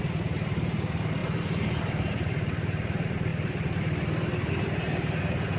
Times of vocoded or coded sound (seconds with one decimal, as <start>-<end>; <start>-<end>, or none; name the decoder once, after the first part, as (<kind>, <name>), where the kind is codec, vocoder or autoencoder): 0.0-1.2 (vocoder, BigVGAN v2); 1.8-3.3; 4.5-5.6